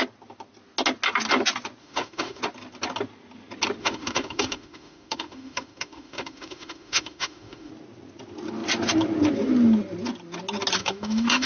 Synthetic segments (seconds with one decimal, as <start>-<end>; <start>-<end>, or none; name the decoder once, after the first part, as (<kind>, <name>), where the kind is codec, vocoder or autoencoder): 1.8-2.4 (autoencoder, DAC-VAE); 3.8-7.7; 10.8-11.5